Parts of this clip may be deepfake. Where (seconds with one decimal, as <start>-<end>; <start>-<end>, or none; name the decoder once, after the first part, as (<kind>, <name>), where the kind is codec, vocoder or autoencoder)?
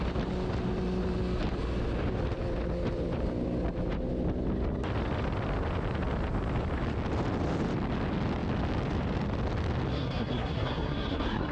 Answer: 9.9-11.5 (codec, SNAC)